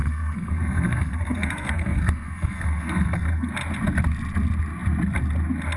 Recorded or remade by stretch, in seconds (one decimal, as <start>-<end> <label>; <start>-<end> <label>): 0.0-3.5 remade; 3.5-5.8 recorded